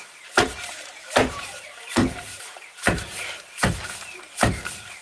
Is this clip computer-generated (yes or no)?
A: yes